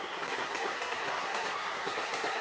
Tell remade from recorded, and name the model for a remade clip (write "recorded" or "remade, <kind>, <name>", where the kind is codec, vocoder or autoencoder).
remade, codec, SNAC